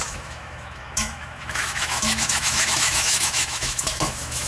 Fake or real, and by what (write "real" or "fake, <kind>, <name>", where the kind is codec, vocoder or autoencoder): fake, autoencoder, DAC-VAE